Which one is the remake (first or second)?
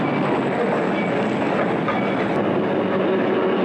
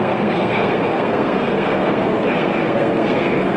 second